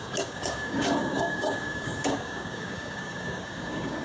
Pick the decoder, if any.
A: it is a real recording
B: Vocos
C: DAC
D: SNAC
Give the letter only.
C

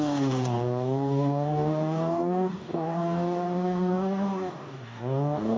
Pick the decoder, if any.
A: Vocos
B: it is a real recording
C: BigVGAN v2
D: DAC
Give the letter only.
D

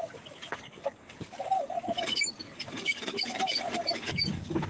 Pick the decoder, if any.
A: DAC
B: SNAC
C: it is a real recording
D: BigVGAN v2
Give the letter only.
A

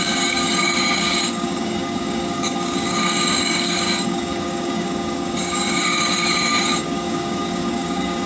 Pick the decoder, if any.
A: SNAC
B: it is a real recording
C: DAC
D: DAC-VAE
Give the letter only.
C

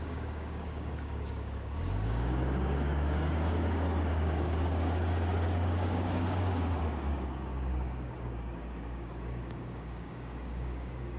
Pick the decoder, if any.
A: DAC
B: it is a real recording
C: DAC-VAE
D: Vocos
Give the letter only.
A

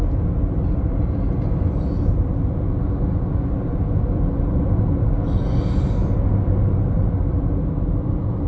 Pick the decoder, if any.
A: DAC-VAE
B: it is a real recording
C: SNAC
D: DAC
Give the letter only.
B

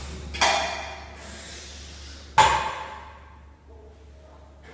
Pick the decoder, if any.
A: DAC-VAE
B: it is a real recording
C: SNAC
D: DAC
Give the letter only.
B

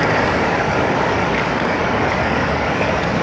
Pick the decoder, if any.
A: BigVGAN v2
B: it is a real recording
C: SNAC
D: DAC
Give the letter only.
D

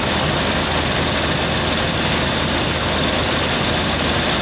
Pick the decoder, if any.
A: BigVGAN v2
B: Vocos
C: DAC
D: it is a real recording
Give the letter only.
D